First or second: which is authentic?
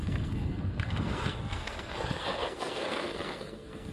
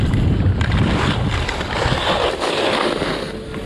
second